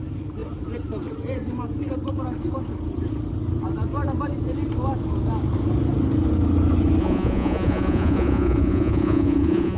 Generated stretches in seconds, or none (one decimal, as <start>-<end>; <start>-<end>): 7.0-9.8